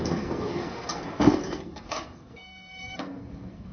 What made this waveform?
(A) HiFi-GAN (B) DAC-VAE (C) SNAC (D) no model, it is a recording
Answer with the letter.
C